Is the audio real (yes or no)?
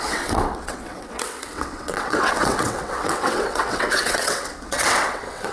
no